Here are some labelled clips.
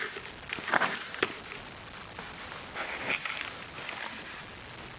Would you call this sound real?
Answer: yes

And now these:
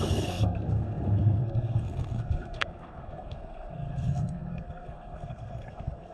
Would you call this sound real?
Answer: no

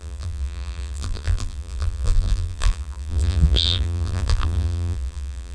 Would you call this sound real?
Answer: no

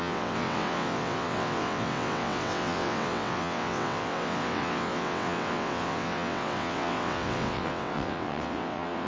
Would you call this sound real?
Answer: no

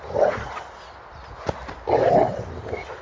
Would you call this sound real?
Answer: yes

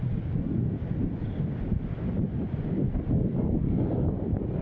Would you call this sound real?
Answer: yes